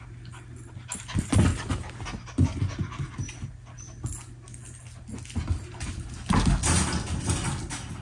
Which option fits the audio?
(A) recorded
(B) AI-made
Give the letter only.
A